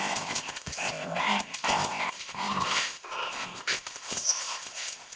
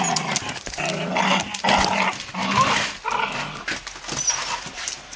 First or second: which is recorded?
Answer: second